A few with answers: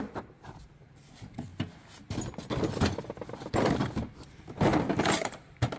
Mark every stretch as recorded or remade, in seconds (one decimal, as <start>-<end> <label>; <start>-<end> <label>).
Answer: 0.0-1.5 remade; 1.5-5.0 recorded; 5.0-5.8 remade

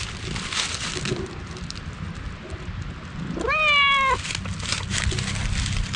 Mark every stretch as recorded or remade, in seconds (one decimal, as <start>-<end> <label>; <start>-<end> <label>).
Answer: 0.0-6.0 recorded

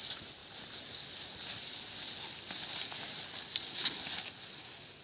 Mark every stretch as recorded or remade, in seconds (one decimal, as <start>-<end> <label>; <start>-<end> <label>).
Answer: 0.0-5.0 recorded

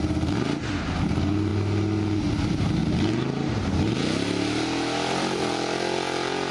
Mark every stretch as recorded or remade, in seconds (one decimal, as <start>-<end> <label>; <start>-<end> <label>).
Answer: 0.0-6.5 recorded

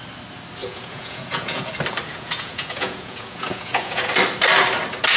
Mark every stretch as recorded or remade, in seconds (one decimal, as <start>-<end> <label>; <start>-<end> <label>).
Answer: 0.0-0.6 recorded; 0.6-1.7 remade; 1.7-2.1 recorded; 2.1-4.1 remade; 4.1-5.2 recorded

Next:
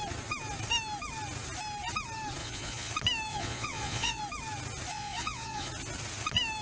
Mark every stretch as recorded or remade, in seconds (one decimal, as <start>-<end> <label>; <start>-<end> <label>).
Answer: 0.0-2.4 recorded; 2.4-2.9 remade; 2.9-3.3 recorded; 3.3-4.2 remade; 4.2-4.9 recorded; 4.9-5.7 remade; 5.7-6.6 recorded

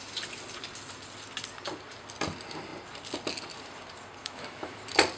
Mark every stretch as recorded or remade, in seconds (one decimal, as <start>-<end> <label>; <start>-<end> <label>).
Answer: 0.0-4.2 recorded; 4.2-4.8 remade; 4.8-5.2 recorded

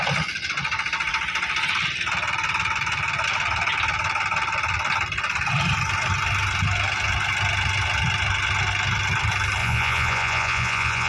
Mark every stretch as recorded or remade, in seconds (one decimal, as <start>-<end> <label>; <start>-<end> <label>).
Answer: 0.0-9.6 recorded; 9.6-11.1 remade